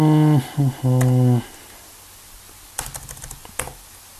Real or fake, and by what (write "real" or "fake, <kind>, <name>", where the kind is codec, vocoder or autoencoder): real